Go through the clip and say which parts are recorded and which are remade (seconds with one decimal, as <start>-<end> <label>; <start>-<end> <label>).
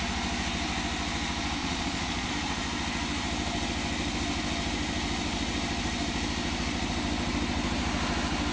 0.0-1.6 recorded; 1.6-2.3 remade; 2.3-8.5 recorded